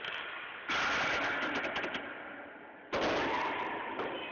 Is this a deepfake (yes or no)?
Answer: no